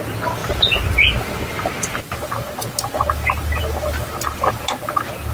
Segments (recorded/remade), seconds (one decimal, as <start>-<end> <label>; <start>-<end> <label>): 0.0-5.3 recorded